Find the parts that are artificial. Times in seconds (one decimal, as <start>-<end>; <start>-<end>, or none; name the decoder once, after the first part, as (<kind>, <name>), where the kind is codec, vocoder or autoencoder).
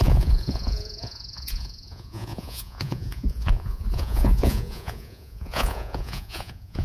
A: 0.0-6.8 (vocoder, Vocos)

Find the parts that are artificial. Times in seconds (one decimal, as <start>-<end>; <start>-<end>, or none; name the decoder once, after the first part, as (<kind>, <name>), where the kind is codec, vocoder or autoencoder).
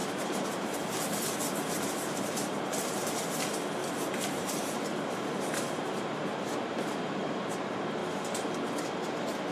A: 0.0-3.2 (vocoder, BigVGAN v2); 3.8-7.5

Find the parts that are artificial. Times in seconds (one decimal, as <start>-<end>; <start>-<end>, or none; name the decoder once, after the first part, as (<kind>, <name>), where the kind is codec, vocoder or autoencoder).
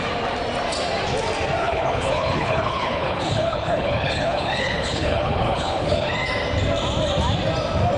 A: 1.6-6.1 (codec, HILCodec)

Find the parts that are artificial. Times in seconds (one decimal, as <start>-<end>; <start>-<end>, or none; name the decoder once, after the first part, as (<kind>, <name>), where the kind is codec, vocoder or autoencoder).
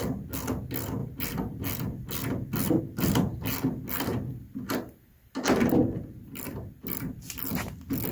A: none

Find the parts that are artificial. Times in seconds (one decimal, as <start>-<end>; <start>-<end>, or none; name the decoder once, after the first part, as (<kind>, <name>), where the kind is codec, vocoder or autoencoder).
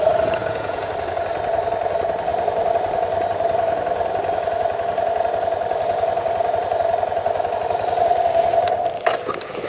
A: 0.4-0.9 (vocoder, Vocos)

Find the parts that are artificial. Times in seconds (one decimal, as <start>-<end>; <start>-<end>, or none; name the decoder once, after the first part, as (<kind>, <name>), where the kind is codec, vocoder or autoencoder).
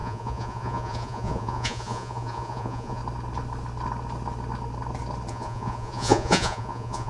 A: 0.0-3.0 (vocoder, Vocos); 5.3-7.1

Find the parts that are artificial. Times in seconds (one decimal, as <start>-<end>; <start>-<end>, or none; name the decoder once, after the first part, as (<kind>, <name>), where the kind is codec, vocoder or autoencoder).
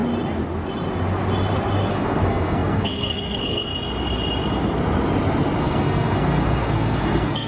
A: 1.9-3.7 (codec, SNAC); 5.6-7.5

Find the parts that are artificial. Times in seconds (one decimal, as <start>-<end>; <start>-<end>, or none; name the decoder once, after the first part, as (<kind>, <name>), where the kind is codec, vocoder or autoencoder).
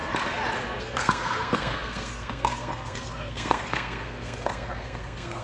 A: 0.8-5.4 (codec, SNAC)